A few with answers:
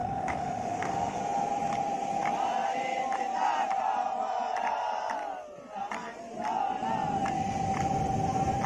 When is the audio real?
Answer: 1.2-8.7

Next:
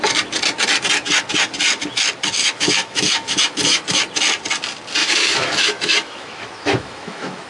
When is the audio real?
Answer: 0.0-2.4; 4.0-5.0

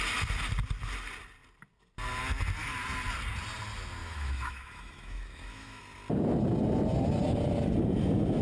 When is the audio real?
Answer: 0.0-4.0; 5.8-8.4

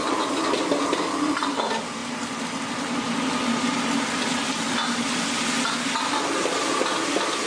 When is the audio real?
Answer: 0.0-7.5

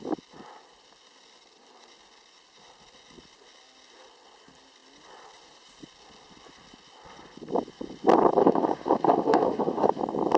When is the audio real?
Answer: 0.0-8.4; 10.0-10.4

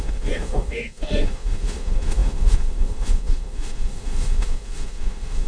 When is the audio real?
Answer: none

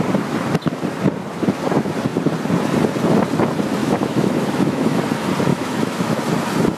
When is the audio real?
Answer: 0.0-3.8; 5.0-5.5; 6.2-6.8